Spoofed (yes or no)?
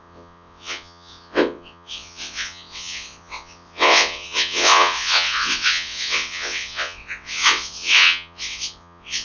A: yes